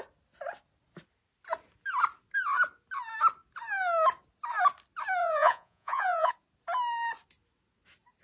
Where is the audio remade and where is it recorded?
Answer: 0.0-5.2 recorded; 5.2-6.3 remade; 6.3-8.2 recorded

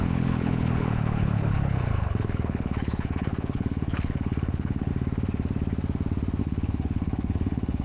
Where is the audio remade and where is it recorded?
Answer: 0.0-4.9 remade; 4.9-6.4 recorded; 6.4-7.8 remade

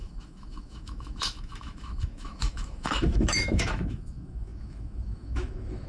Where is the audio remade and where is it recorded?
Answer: 0.0-5.9 remade

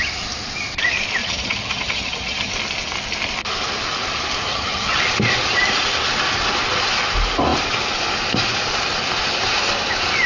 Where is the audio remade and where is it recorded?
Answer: 0.0-1.2 recorded; 1.2-2.5 remade; 2.5-4.5 recorded; 4.5-5.0 remade; 5.0-10.3 recorded

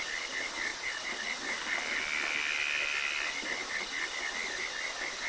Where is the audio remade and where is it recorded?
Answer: 0.0-0.7 recorded; 0.7-1.2 remade; 1.2-5.3 recorded